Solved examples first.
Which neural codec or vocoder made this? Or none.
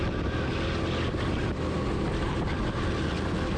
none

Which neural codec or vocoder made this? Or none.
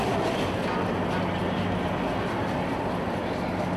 none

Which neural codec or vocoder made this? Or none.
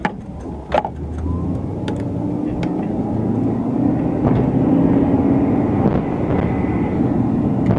none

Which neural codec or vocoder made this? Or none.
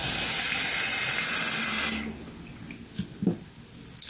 none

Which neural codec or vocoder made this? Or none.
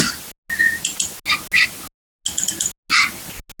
none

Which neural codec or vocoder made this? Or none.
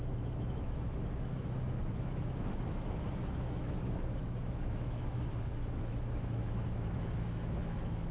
autoencoder, DAC-VAE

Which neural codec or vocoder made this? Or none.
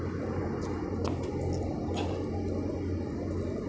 none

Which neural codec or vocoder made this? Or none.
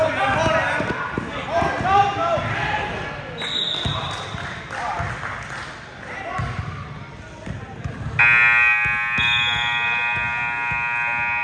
none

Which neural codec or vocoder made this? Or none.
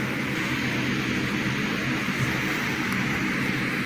none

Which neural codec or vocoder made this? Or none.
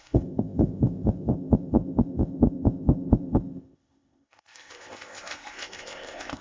codec, ZipCodec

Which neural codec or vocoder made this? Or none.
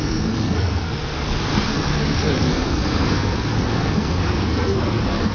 codec, SNAC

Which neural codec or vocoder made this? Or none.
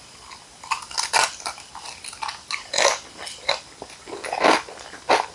none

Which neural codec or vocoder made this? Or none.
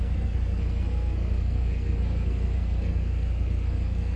codec, SNAC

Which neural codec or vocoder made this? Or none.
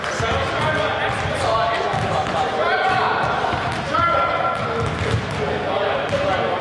none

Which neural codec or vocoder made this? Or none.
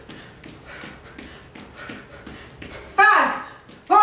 none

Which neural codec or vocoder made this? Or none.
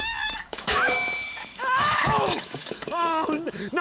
autoencoder, DAC-VAE